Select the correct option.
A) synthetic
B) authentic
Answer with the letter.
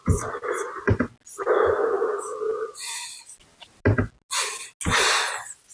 B